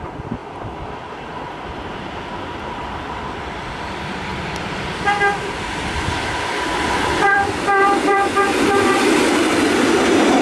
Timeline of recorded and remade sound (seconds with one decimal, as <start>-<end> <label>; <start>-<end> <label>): 0.0-10.4 remade

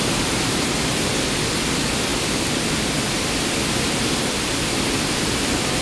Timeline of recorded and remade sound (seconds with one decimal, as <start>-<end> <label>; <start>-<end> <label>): 0.0-5.8 recorded

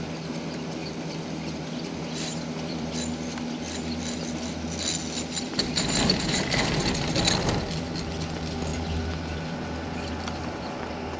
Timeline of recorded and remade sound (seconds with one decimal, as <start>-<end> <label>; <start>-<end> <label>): 0.0-0.8 recorded; 0.8-2.9 remade; 2.9-5.5 recorded; 5.5-6.8 remade; 6.8-11.2 recorded

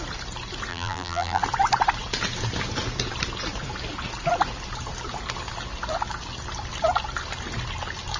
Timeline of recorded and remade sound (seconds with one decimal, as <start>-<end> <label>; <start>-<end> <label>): 0.0-0.7 recorded; 0.7-1.4 remade; 1.4-8.2 recorded

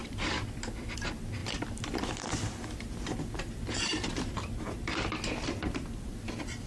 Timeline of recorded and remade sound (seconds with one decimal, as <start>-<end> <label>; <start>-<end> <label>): 0.0-6.7 remade

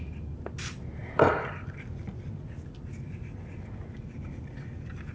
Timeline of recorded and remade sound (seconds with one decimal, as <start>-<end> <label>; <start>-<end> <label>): 0.0-1.0 recorded; 1.0-1.6 remade; 1.6-5.1 recorded